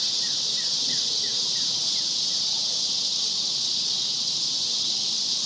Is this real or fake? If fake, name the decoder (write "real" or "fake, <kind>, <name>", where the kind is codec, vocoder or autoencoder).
fake, vocoder, WaveNeXt